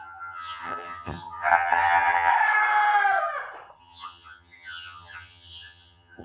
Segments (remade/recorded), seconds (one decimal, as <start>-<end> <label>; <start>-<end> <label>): 0.0-2.3 remade; 2.3-3.8 recorded; 3.8-6.2 remade